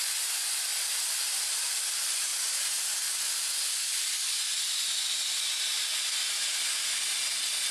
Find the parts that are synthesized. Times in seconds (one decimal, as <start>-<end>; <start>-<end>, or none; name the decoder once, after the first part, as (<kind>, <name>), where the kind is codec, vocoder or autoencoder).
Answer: none